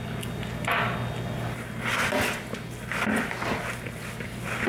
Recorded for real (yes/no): yes